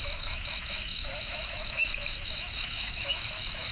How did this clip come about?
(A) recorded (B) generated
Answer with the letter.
B